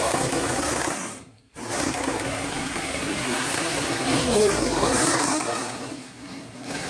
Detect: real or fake fake